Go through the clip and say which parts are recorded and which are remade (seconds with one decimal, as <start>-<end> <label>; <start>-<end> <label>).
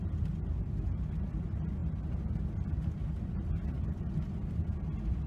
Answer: 0.0-5.3 recorded